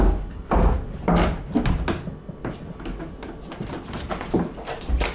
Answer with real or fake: real